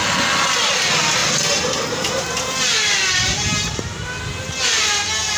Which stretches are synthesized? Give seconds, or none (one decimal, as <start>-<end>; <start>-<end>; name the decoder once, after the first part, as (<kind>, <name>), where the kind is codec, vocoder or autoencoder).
none